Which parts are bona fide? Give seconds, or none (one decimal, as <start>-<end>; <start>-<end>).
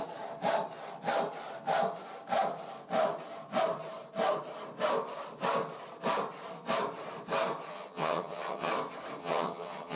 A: 0.0-7.7; 8.7-9.2